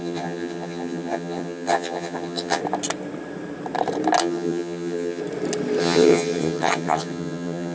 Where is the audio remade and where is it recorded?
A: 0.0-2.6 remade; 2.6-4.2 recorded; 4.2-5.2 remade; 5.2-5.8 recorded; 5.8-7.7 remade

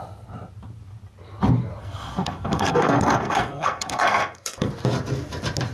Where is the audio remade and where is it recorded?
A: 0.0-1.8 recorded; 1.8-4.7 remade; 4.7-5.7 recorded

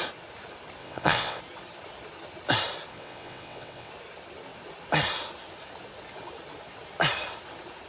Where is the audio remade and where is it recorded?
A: 0.0-0.8 recorded; 0.8-1.4 remade; 1.4-2.9 recorded; 2.9-3.9 remade; 3.9-7.9 recorded

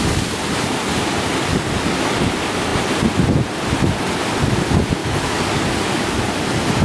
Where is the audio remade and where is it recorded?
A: 0.0-1.5 recorded; 1.5-2.0 remade; 2.0-5.0 recorded; 5.0-6.2 remade; 6.2-6.8 recorded